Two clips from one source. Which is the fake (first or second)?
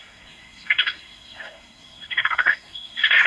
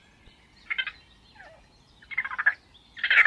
first